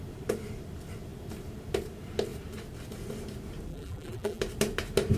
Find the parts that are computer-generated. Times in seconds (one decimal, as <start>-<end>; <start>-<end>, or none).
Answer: 3.7-4.4